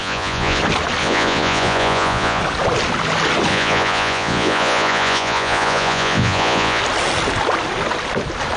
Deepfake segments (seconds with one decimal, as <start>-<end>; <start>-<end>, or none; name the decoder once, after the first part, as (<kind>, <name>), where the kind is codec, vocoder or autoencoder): 0.0-0.6 (vocoder, Vocos); 1.0-2.4; 3.5-6.8